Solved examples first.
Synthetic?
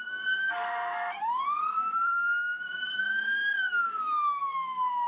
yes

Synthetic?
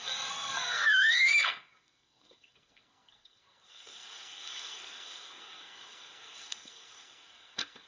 yes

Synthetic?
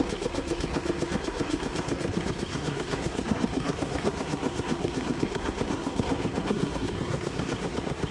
yes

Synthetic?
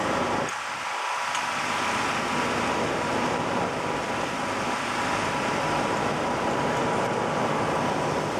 no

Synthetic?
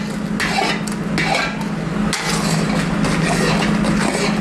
no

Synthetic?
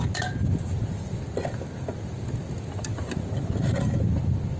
no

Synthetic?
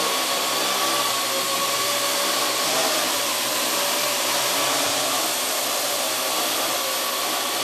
no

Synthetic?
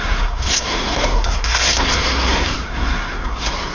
yes